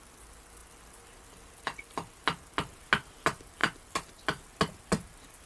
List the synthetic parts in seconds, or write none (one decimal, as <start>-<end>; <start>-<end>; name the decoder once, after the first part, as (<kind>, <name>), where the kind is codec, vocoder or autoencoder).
none